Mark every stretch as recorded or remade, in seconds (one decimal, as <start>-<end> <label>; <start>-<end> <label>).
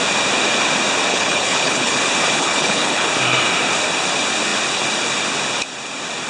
0.0-1.1 recorded; 1.1-2.0 remade; 2.0-2.4 recorded; 2.4-3.1 remade; 3.1-6.3 recorded